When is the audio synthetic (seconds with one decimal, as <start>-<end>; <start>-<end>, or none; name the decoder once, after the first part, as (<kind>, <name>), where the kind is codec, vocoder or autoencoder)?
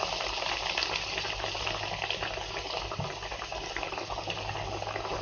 none